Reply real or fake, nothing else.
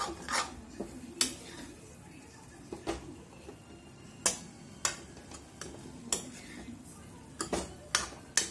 real